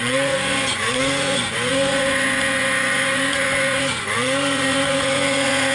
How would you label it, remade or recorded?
remade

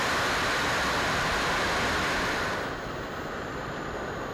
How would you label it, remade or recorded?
recorded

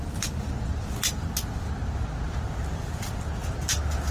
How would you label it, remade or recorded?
recorded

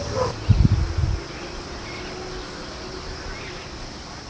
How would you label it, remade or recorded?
recorded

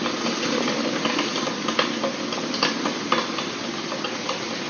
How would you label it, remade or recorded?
recorded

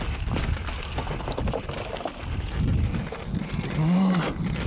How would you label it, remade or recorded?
recorded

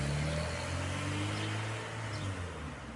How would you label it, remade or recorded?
recorded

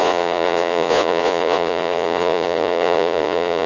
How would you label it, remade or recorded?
remade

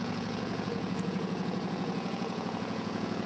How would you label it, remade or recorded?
remade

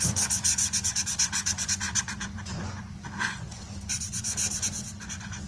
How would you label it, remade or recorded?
remade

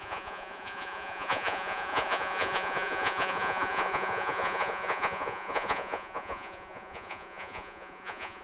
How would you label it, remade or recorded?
remade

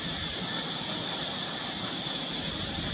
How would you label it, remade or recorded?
recorded